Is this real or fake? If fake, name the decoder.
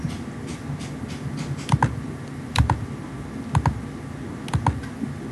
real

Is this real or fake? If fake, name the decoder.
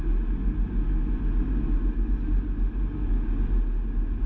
real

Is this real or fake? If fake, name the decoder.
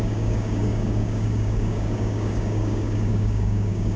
fake, codec, DAC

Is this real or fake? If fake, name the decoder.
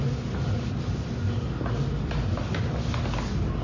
real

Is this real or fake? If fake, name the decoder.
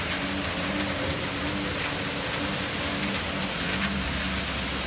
real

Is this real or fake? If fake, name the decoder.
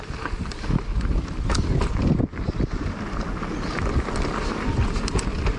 real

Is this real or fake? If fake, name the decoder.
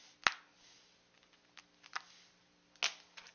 real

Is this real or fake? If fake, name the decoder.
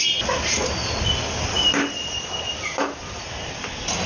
real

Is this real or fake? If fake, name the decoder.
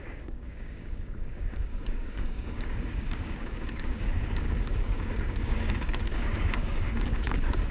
fake, codec, DAC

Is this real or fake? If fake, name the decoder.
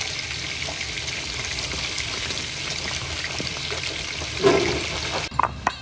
real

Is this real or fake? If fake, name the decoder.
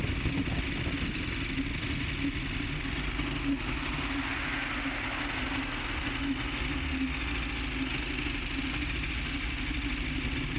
real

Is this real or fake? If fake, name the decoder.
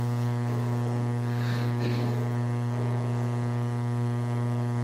fake, codec, DAC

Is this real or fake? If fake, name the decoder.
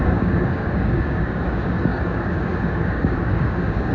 fake, codec, DAC